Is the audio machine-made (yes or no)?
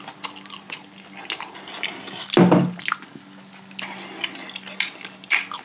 no